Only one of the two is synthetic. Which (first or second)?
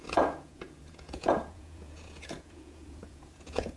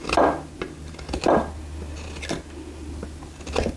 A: first